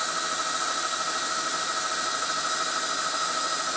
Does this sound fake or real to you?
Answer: real